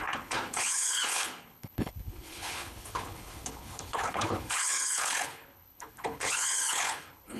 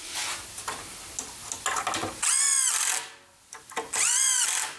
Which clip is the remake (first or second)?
first